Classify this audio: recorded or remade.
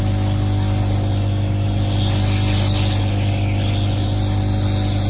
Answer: recorded